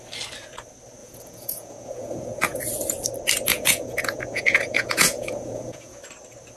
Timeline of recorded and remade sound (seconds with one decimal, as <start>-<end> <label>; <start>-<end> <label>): 0.0-1.0 recorded; 1.0-2.6 remade; 2.6-3.5 recorded; 3.5-6.0 remade; 6.0-6.6 recorded